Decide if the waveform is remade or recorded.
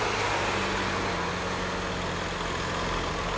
recorded